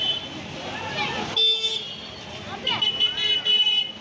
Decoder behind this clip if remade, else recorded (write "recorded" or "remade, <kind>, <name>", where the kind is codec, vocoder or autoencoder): recorded